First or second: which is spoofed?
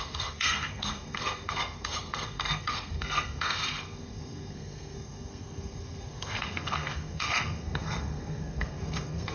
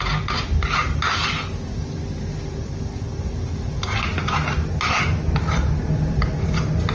first